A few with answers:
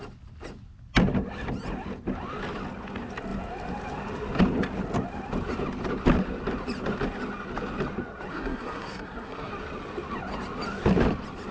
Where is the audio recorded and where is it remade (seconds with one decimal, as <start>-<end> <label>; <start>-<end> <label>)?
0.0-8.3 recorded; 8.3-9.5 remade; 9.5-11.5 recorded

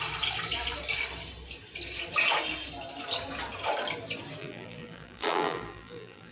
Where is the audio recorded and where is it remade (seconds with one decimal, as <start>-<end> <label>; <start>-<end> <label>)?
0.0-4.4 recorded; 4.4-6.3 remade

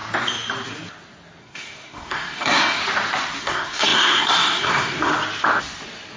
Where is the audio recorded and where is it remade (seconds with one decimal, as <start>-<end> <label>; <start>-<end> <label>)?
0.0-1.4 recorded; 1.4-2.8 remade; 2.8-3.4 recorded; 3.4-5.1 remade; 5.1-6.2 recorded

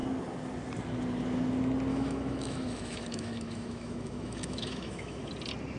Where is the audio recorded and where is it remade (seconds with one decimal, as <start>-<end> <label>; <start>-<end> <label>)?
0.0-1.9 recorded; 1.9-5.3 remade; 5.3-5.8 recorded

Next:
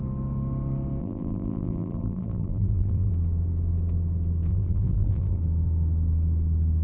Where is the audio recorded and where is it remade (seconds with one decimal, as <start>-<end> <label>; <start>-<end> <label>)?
0.0-1.0 recorded; 1.0-3.1 remade; 3.1-4.5 recorded; 4.5-5.4 remade; 5.4-6.8 recorded

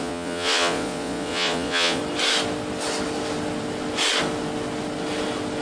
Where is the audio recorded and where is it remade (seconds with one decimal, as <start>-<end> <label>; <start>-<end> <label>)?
0.0-2.0 remade; 2.0-5.6 recorded

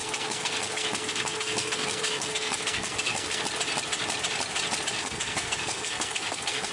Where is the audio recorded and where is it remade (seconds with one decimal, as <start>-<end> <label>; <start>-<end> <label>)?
0.0-3.4 remade; 3.4-5.0 recorded; 5.0-6.7 remade

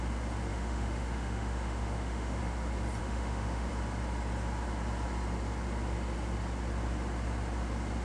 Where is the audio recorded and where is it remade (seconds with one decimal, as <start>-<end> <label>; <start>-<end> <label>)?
0.0-0.5 recorded; 0.5-2.4 remade; 2.4-3.0 recorded; 3.0-3.7 remade; 3.7-8.0 recorded